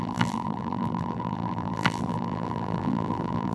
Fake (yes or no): yes